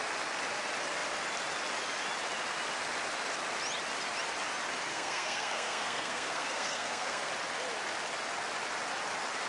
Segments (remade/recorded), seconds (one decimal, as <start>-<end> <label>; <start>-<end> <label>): 0.0-4.9 recorded; 4.9-7.3 remade; 7.3-9.5 recorded